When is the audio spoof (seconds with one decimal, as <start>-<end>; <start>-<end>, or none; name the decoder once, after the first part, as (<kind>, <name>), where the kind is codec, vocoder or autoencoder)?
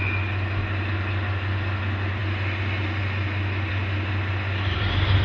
none